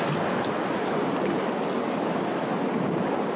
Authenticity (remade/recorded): recorded